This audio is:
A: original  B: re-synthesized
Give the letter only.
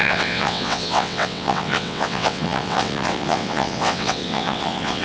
B